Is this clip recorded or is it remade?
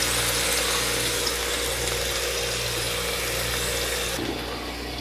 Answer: recorded